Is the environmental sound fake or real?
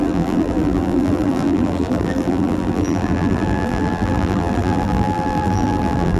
fake